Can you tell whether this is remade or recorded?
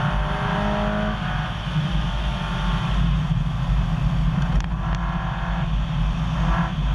recorded